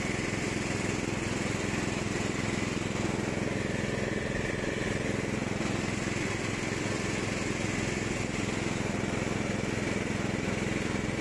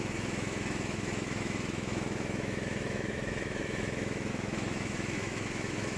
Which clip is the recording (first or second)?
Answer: first